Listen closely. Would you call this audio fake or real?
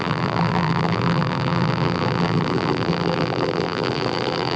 fake